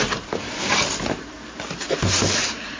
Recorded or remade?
remade